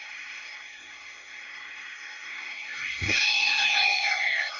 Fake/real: fake